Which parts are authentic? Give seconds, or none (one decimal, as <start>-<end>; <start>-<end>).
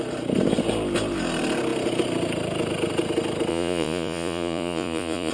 0.0-3.5